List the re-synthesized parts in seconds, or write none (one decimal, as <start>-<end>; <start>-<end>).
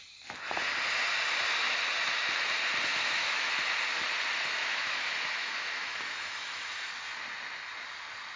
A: 2.9-3.5; 4.6-6.9